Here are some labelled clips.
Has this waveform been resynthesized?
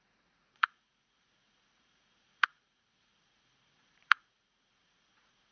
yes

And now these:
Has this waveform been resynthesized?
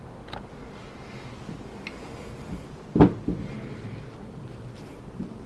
no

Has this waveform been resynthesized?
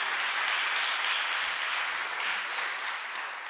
no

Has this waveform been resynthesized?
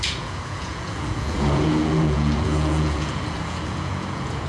yes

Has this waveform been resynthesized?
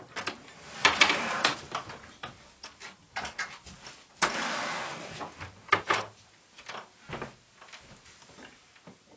no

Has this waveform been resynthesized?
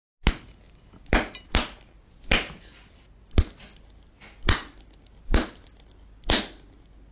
no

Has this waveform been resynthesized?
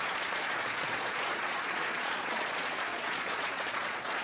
yes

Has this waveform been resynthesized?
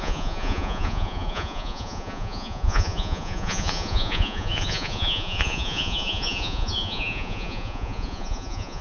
yes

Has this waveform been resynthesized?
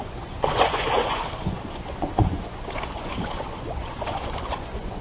yes